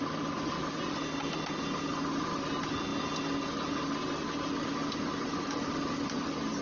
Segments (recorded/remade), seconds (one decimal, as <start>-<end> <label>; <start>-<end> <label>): 0.0-6.6 recorded